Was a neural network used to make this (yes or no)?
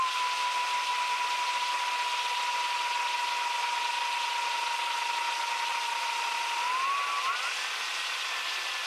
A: no